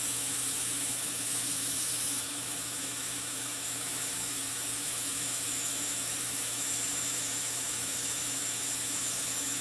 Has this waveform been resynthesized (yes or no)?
yes